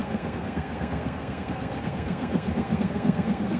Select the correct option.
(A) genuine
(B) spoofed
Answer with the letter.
B